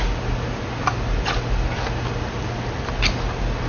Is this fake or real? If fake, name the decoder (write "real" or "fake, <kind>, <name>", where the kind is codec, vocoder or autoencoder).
real